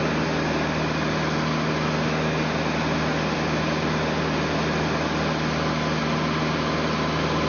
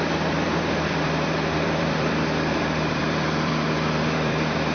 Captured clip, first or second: first